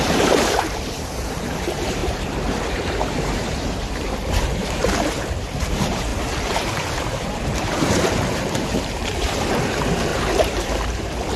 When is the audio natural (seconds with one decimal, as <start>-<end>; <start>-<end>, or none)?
none